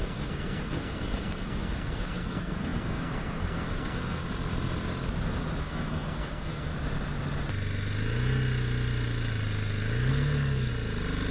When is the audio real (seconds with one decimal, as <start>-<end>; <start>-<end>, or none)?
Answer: 4.2-5.6; 6.7-10.1; 10.7-11.3